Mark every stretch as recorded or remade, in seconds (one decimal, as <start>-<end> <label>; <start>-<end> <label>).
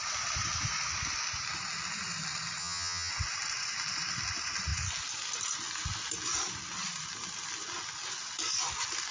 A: 0.0-2.6 recorded; 2.6-3.1 remade; 3.1-9.1 recorded